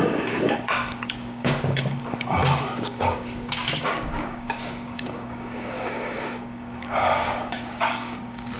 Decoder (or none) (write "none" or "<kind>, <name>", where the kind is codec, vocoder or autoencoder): codec, DAC